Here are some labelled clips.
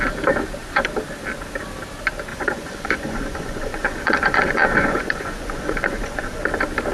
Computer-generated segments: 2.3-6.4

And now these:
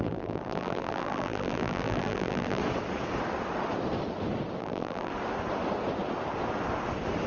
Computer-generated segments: 0.0-2.6; 4.6-5.1

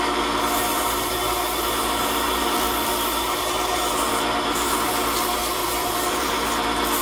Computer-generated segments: 0.7-4.9; 5.6-6.6

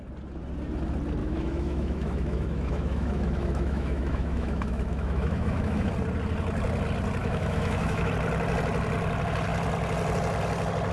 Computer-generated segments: 1.2-5.9; 7.2-8.1